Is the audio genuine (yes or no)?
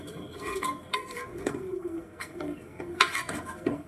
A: no